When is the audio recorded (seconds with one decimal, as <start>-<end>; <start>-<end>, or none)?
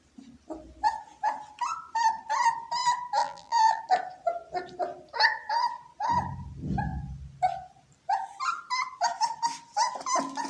0.0-3.2; 3.8-10.5